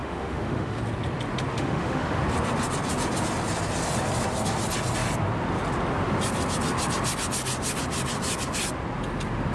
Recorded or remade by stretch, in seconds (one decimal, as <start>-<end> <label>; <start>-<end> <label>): 0.0-0.8 remade; 0.8-1.5 recorded; 1.5-2.2 remade; 2.2-9.5 recorded